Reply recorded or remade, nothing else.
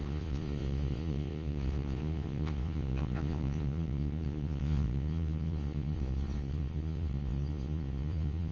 remade